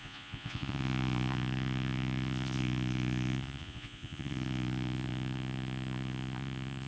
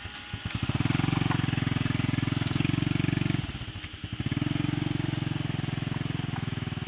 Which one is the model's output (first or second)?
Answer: first